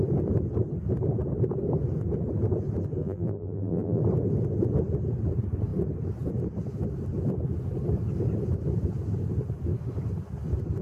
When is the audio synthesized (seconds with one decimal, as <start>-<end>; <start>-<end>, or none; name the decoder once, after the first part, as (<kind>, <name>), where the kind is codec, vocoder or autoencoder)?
3.0-4.0 (vocoder, BigVGAN v2)